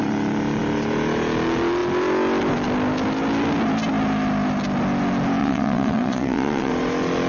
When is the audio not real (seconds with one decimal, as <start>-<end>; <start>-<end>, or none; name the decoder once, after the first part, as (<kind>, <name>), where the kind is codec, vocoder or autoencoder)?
5.4-6.7 (vocoder, WaveNeXt)